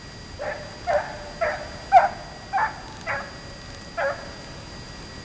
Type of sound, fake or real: real